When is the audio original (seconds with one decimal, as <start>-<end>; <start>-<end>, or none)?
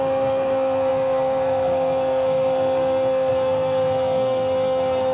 none